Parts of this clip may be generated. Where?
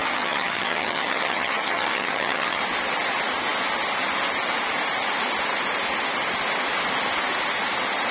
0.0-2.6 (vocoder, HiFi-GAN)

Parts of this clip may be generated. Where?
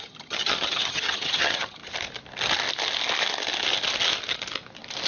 0.0-1.8 (vocoder, HiFi-GAN)